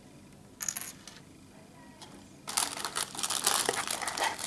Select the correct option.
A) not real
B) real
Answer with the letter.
B